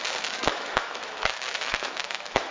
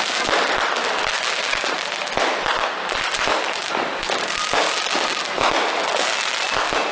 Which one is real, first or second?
second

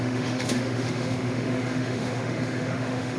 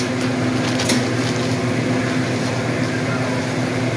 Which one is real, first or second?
second